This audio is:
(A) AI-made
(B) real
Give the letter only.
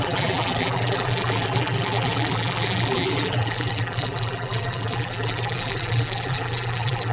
A